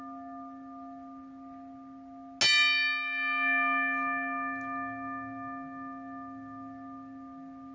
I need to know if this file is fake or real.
real